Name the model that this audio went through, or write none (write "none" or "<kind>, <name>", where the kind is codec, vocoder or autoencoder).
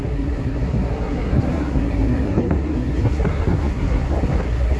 codec, SNAC